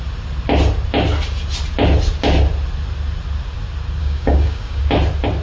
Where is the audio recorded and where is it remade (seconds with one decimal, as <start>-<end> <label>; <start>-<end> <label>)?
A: 0.0-4.0 recorded; 4.0-4.8 remade; 4.8-5.4 recorded